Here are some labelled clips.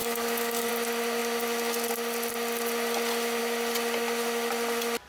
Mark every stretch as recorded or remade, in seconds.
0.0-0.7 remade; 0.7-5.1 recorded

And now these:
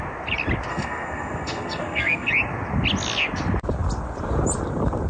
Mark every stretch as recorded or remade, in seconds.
0.0-0.7 recorded; 0.7-2.3 remade; 2.3-5.1 recorded

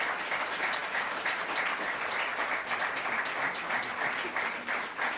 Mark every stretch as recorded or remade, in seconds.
0.0-2.3 remade; 2.3-3.8 recorded; 3.8-5.2 remade

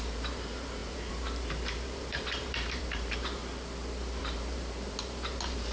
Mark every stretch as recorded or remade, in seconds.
0.0-3.4 remade; 3.4-4.2 recorded; 4.2-5.7 remade

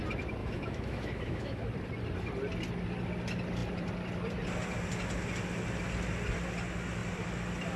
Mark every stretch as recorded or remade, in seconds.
0.0-0.4 recorded; 0.4-1.6 remade; 1.6-7.8 recorded

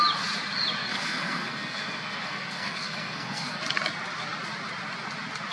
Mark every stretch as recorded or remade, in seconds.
0.0-0.8 recorded; 0.8-3.6 remade; 3.6-5.5 recorded